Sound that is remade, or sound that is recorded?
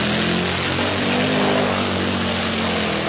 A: recorded